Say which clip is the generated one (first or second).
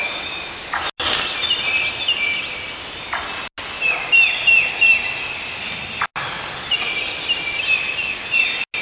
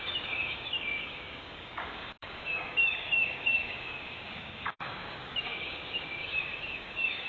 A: second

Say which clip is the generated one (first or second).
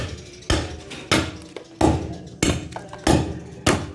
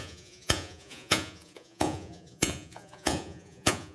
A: second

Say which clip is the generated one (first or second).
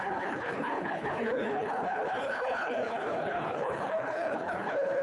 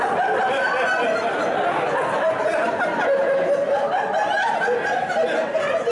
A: first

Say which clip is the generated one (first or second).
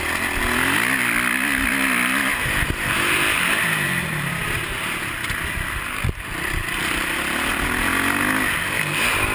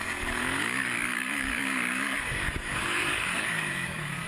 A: second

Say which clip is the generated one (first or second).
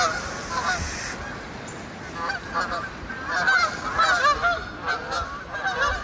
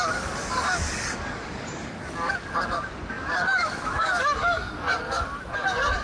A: second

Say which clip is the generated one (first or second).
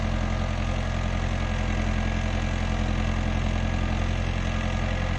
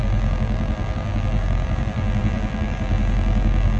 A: second